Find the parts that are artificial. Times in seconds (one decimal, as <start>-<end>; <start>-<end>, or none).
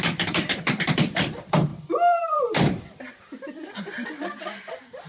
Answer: 0.0-5.1